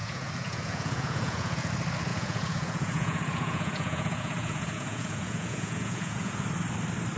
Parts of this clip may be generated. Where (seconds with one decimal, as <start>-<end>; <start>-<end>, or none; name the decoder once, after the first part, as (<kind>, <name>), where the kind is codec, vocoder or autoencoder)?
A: 0.0-1.7 (vocoder, Vocos); 2.1-6.4